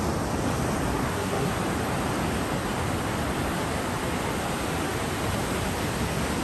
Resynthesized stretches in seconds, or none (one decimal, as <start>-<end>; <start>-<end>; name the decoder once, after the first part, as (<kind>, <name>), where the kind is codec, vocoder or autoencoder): 0.9-1.5 (codec, SNAC)